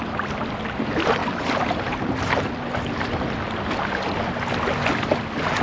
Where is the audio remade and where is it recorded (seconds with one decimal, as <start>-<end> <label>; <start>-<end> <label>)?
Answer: 0.0-5.6 recorded